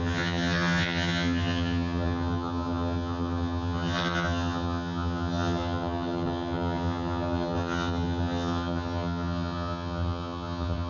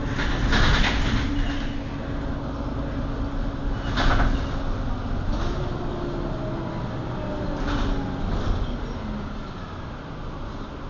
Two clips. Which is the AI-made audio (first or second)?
first